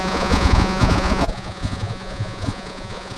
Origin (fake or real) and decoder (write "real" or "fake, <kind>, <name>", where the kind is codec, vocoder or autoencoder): fake, vocoder, Vocos